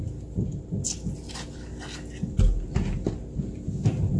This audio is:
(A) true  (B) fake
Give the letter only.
A